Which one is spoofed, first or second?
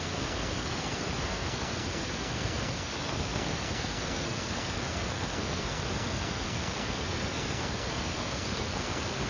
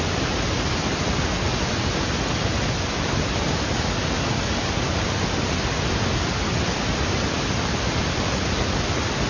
first